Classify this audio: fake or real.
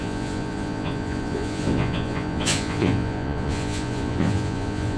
fake